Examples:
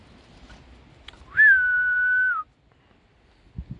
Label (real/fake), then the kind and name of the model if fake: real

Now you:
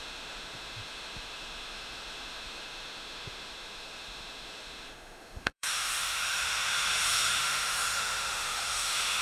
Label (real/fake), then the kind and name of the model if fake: fake, autoencoder, DAC-VAE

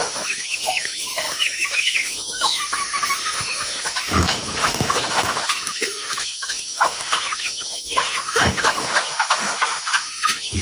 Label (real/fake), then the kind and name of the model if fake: fake, autoencoder, DAC-VAE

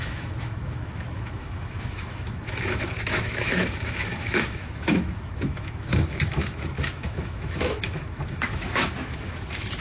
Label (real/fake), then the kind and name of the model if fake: fake, autoencoder, DAC-VAE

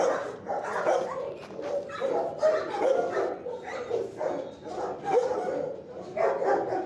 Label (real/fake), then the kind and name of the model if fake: real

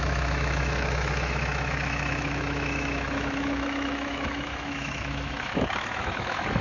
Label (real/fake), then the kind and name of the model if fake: fake, autoencoder, DAC-VAE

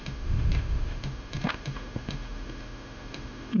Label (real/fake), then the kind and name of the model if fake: fake, autoencoder, DAC-VAE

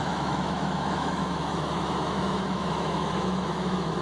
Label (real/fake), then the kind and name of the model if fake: fake, autoencoder, DAC-VAE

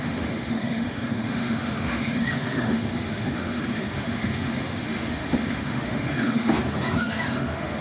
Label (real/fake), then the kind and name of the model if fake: fake, autoencoder, DAC-VAE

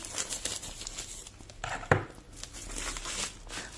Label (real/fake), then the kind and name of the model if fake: real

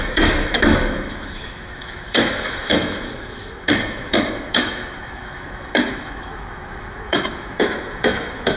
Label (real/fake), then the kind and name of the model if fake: fake, autoencoder, DAC-VAE